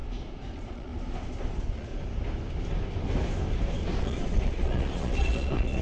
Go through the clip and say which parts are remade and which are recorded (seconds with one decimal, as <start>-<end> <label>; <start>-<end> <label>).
0.0-0.5 recorded; 0.5-0.9 remade; 0.9-1.5 recorded; 1.5-1.9 remade; 1.9-4.0 recorded; 4.0-5.8 remade